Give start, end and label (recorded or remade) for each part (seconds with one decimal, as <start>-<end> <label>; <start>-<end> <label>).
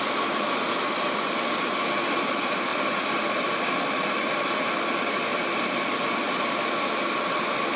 0.0-7.8 recorded